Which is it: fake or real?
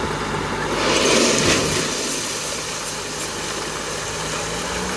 real